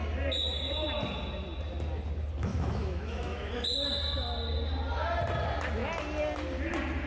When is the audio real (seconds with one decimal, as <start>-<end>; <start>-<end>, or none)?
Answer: 0.0-2.5; 3.5-7.1